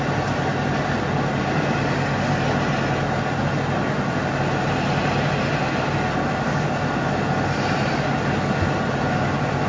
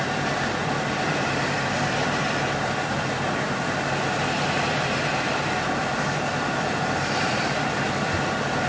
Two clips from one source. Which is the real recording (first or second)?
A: first